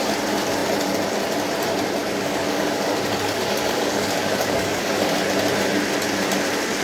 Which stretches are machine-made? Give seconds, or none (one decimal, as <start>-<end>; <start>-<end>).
2.0-5.2